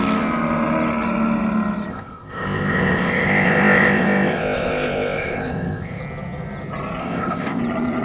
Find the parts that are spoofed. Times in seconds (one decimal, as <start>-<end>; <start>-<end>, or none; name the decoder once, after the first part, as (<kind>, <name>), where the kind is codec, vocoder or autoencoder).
1.9-6.0 (codec, ZipCodec); 7.0-7.6